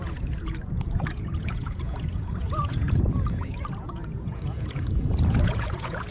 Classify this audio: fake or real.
fake